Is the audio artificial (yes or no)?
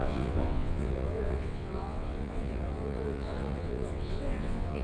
yes